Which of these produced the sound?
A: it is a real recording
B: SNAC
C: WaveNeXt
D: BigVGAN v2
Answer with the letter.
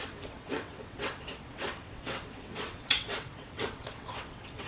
C